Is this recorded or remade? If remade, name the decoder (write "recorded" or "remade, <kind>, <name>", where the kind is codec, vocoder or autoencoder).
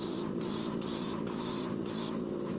remade, vocoder, BigVGAN v2